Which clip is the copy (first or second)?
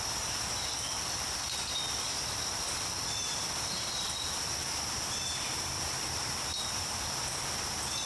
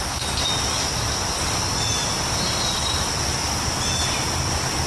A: first